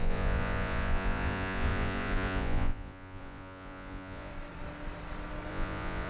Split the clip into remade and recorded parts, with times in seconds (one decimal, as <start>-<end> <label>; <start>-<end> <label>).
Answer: 0.0-4.3 remade; 4.3-5.5 recorded; 5.5-6.1 remade